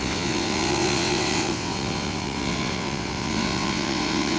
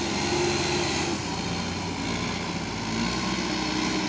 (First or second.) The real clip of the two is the second